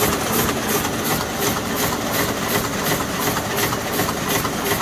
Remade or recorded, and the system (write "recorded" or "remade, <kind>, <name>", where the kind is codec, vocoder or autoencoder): recorded